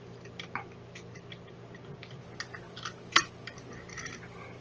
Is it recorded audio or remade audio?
recorded